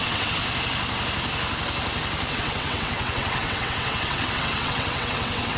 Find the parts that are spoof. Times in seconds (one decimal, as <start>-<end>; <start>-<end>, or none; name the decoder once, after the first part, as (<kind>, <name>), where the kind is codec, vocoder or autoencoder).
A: 0.0-0.4 (vocoder, WaveNeXt); 2.3-5.6